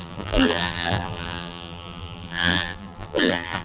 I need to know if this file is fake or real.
fake